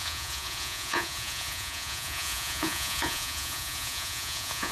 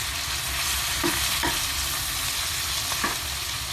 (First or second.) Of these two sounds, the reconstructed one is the first